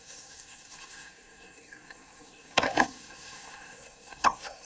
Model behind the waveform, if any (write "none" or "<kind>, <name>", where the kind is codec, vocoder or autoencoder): codec, SNAC